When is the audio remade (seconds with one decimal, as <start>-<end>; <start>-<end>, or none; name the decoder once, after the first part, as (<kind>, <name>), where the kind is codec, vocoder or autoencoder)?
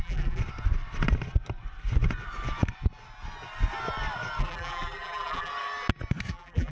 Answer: 0.0-0.4 (vocoder, BigVGAN v2); 4.4-5.5; 6.3-6.7